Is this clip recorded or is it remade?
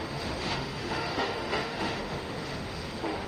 remade